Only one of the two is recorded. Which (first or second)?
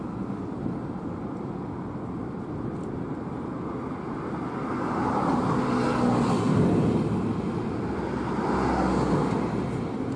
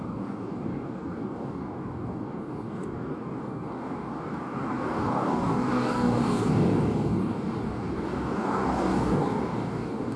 first